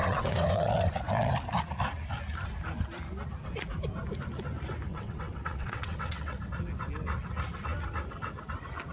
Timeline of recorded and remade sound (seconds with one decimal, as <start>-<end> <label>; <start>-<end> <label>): 0.0-1.3 remade; 1.3-4.9 recorded; 4.9-6.4 remade; 6.4-8.9 recorded